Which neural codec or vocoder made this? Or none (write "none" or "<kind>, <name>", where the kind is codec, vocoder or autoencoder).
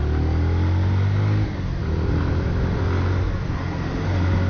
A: none